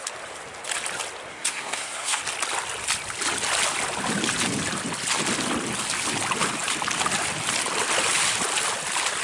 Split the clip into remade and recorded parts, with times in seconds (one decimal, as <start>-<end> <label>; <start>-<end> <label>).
0.0-1.3 recorded; 1.3-2.2 remade; 2.2-9.2 recorded